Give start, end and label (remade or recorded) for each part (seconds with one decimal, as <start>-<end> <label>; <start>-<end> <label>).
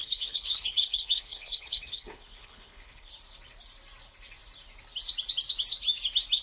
0.0-3.1 remade; 3.1-6.4 recorded